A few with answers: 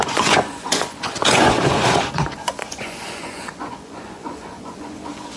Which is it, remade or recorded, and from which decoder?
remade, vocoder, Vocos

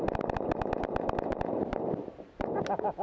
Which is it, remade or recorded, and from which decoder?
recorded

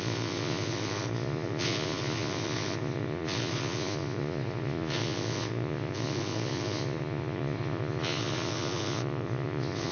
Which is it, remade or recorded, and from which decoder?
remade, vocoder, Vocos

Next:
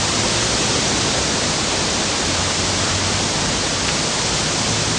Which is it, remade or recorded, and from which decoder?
recorded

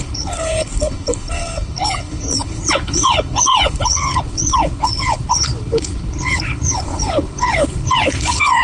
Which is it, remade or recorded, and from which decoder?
remade, codec, HILCodec